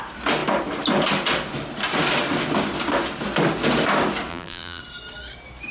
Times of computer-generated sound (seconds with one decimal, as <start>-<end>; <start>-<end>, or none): 4.3-4.8